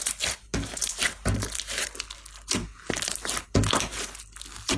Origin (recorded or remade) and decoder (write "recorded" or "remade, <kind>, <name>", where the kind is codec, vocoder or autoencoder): recorded